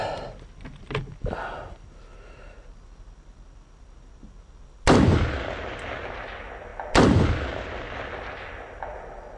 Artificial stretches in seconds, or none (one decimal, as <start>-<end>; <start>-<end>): none